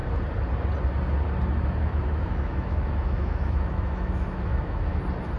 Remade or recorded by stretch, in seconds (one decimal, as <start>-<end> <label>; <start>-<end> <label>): 0.0-1.8 recorded; 1.8-5.0 remade; 5.0-5.4 recorded